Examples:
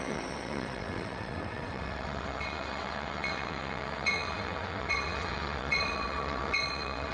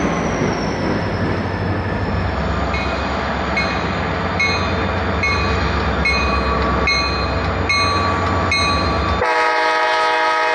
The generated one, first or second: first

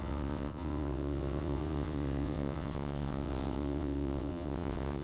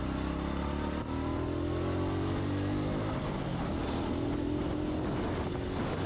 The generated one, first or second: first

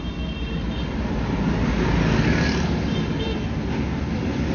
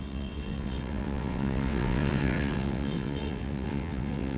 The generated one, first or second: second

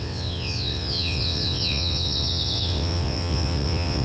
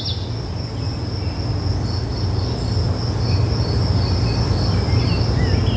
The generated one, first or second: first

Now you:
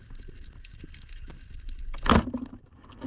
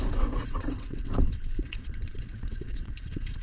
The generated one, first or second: second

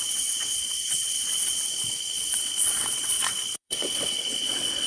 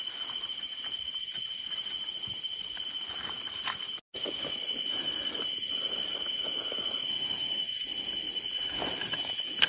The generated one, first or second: first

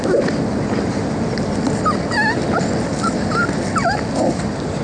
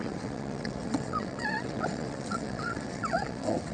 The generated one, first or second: second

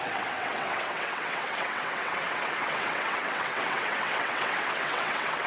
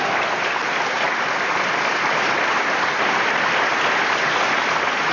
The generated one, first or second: first